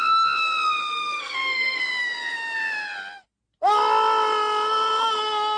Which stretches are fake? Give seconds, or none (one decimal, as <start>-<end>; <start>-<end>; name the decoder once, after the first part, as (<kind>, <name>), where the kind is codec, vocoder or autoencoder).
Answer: 0.9-1.8 (codec, SNAC)